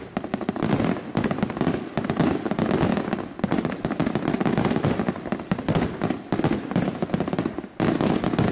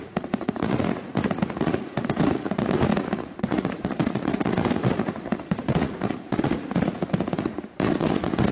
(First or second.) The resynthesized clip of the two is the second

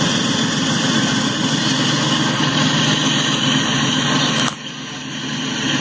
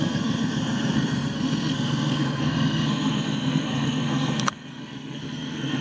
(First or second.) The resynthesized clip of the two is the second